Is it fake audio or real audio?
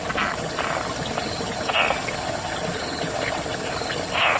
real